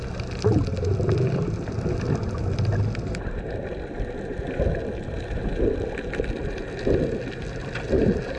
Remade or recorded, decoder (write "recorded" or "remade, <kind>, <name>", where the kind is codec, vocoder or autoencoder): recorded